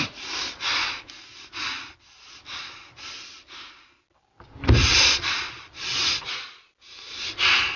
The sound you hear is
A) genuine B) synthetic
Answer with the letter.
A